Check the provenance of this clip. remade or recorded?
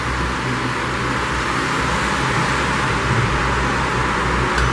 recorded